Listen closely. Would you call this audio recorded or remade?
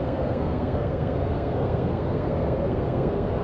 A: remade